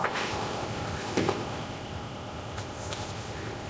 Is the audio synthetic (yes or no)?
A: yes